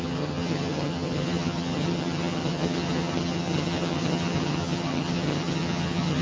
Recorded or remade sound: remade